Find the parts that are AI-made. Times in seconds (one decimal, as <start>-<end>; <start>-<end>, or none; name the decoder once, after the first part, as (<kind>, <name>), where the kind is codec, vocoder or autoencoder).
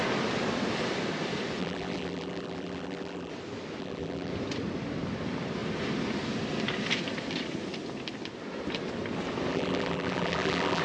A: 1.6-3.3 (vocoder, BigVGAN v2); 3.8-4.3; 9.5-10.8